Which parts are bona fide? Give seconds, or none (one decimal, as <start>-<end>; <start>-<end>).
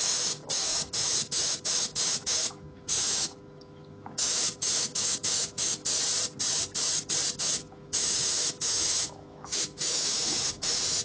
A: 5.9-7.4